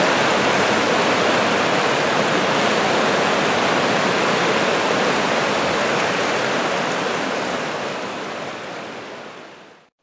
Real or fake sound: real